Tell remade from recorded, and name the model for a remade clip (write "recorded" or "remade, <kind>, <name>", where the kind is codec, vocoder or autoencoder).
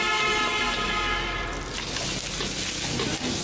recorded